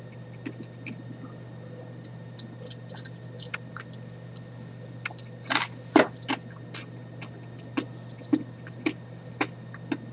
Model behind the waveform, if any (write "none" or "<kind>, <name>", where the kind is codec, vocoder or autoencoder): none